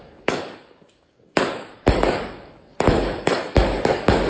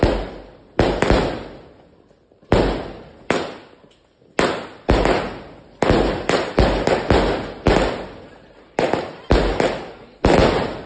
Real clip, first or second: second